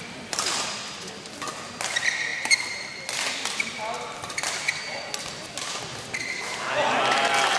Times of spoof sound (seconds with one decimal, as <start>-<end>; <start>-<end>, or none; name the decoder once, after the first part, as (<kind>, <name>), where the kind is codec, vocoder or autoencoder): none